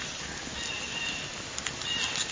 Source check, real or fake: real